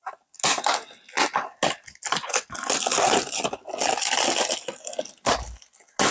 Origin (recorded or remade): recorded